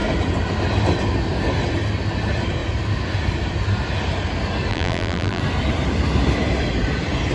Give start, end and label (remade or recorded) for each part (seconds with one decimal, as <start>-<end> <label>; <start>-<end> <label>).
0.0-4.7 recorded; 4.7-5.4 remade; 5.4-7.3 recorded